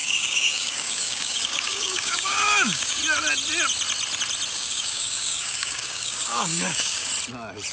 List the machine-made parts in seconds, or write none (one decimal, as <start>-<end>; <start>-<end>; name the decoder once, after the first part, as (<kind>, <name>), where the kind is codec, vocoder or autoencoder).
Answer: 0.0-3.0 (codec, DAC); 4.5-7.1